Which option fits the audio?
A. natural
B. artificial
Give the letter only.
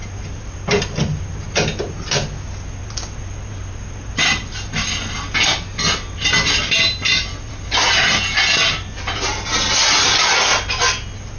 A